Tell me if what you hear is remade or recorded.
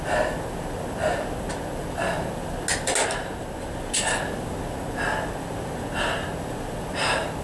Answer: recorded